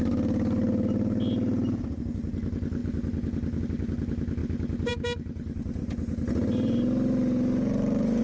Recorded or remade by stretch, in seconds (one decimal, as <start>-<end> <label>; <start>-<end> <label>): 0.0-8.2 recorded